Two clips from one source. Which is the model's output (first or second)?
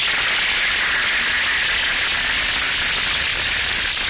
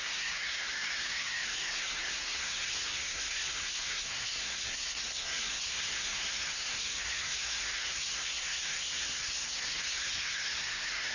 second